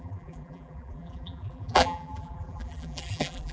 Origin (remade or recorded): remade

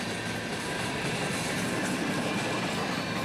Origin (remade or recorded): recorded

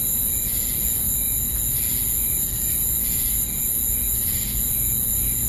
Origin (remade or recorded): recorded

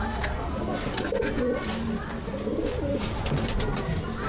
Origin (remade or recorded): recorded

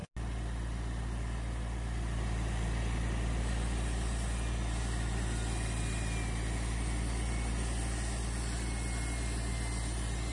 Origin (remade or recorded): recorded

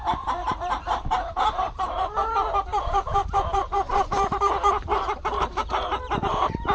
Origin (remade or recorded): remade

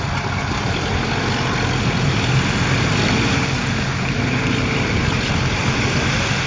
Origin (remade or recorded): recorded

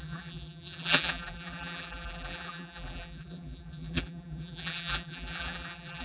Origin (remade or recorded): remade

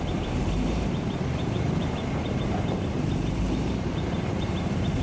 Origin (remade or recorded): remade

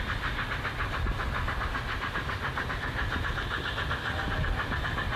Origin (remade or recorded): recorded